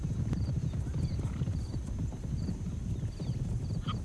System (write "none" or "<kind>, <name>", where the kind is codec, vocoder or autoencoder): none